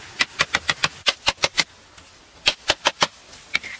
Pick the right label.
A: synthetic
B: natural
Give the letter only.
B